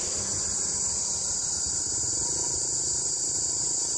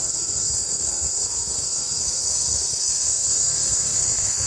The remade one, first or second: second